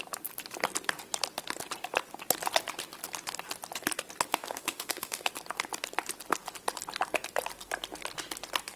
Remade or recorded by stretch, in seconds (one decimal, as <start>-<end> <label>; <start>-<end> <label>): 0.0-4.3 recorded; 4.3-5.3 remade; 5.3-8.8 recorded